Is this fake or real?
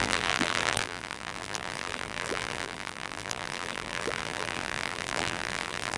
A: fake